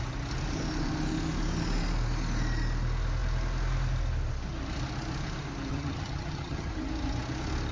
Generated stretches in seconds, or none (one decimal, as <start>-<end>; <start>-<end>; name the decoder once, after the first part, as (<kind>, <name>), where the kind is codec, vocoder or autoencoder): 5.7-6.7 (vocoder, HiFi-GAN)